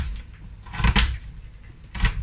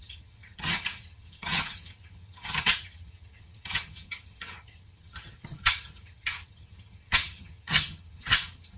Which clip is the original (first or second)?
first